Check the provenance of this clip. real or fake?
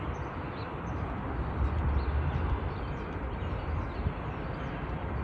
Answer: real